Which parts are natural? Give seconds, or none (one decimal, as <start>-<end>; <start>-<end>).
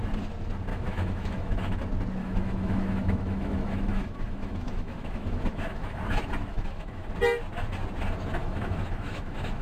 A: 0.0-0.7; 1.8-2.2; 6.0-6.5; 7.1-8.4